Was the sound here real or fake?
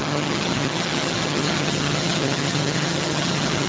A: fake